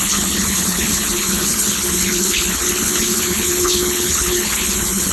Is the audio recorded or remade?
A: remade